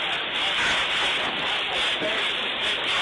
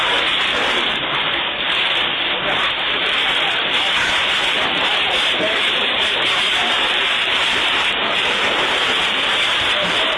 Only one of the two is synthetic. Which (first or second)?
second